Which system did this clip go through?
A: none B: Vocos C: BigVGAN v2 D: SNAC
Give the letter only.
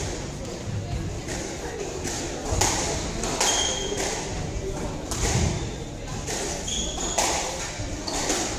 A